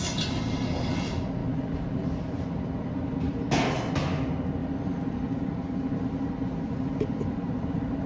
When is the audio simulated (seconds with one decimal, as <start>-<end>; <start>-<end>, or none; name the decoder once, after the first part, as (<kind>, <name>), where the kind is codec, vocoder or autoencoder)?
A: 1.4-3.3 (vocoder, BigVGAN v2); 4.6-8.1